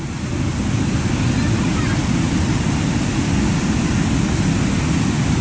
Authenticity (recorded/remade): recorded